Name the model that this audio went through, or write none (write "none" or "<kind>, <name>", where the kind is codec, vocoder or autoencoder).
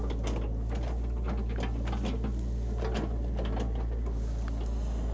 none